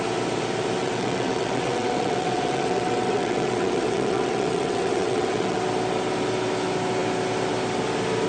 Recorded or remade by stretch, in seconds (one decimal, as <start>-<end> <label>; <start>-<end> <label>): 0.0-0.8 recorded; 0.8-5.6 remade; 5.6-8.3 recorded